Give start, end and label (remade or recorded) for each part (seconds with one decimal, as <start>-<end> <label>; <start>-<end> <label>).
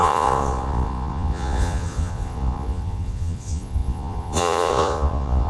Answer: 0.0-5.5 remade